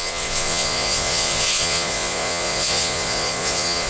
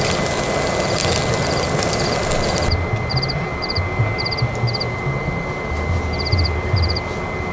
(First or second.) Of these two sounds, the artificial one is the first